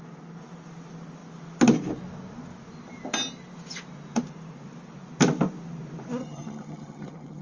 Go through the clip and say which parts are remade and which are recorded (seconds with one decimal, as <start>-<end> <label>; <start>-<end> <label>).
0.0-6.2 recorded; 6.2-7.4 remade